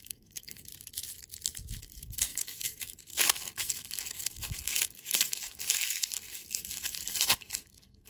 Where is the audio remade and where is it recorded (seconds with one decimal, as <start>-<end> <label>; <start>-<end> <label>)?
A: 0.0-0.7 remade; 0.7-1.8 recorded; 1.8-8.1 remade